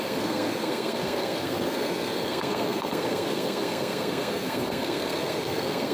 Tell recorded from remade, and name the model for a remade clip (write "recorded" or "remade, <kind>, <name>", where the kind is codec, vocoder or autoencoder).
remade, codec, SNAC